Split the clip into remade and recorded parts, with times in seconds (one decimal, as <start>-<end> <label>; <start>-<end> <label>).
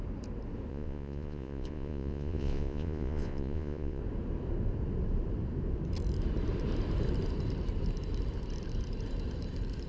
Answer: 0.0-0.7 recorded; 0.7-4.0 remade; 4.0-9.9 recorded